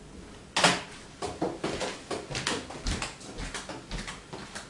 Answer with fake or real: real